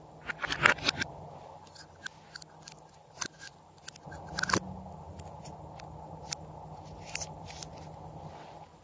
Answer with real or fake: real